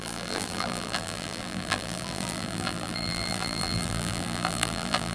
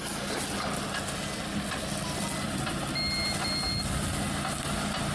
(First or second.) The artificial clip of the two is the first